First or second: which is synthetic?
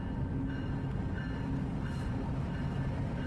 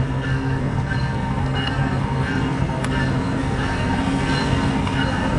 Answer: second